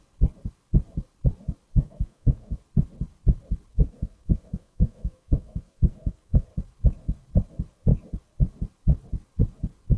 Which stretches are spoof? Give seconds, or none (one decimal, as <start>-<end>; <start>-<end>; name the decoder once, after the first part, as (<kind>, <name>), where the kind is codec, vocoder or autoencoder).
1.7-2.6 (codec, SNAC); 3.7-6.5